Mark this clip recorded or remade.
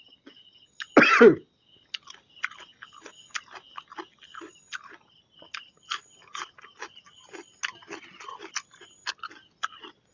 recorded